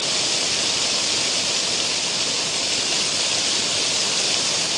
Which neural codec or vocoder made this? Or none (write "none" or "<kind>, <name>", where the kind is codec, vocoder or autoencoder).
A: none